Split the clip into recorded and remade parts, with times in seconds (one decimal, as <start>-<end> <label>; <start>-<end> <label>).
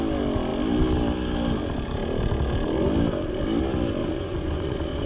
0.0-4.0 recorded; 4.0-5.1 remade